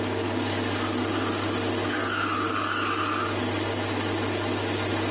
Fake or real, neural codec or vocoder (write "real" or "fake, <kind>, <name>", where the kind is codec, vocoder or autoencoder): real